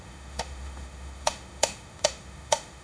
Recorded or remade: remade